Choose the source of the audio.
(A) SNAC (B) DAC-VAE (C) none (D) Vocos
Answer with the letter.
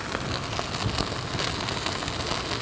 C